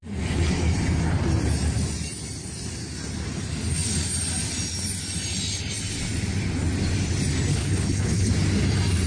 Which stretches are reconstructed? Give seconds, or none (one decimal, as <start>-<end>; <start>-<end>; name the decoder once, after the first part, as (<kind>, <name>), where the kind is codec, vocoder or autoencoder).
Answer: 7.5-8.3 (codec, HILCodec)